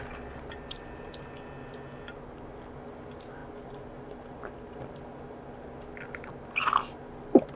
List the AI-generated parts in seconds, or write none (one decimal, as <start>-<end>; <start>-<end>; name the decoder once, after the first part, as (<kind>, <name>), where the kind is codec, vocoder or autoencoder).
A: none